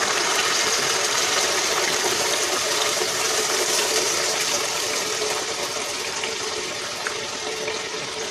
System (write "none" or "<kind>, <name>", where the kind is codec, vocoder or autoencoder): vocoder, BigVGAN v2